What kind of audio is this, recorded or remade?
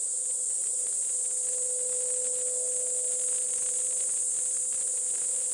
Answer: recorded